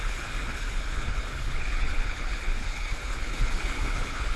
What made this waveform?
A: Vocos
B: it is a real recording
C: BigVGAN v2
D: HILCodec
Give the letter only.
D